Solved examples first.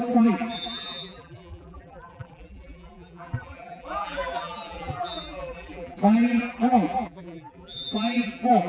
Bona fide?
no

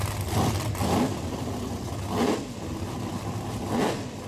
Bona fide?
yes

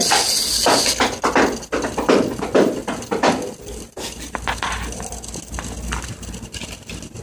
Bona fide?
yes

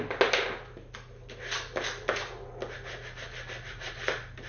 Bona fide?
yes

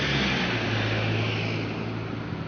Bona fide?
yes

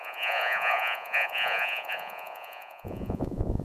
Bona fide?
no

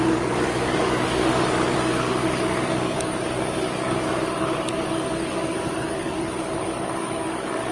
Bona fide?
no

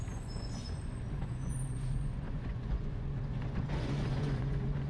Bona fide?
no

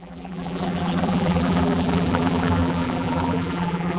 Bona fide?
no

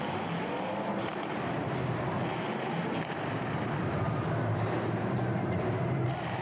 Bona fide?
no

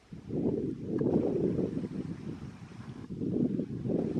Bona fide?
no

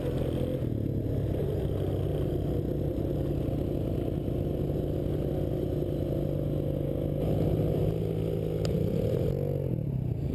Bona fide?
yes